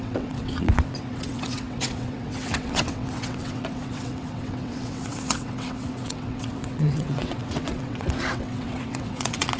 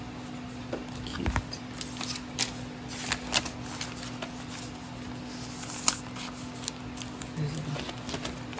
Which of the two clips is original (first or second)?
second